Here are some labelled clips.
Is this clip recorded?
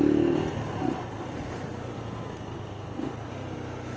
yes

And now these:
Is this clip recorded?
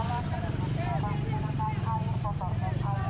yes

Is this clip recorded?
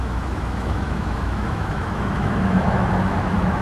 no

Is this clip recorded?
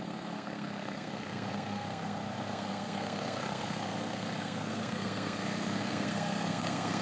no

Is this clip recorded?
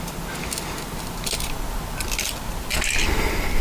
yes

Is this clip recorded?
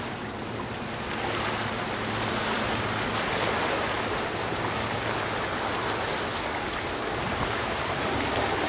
yes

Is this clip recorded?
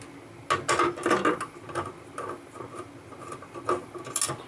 yes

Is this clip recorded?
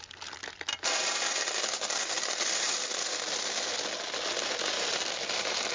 yes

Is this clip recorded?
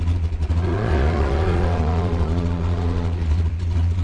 no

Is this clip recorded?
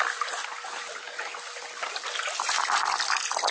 yes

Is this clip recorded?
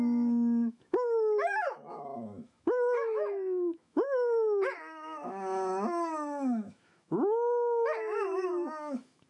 no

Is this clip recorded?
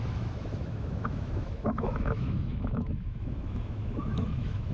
no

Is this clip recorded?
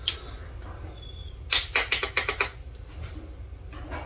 yes